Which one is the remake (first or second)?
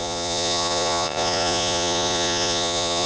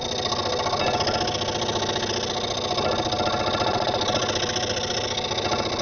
first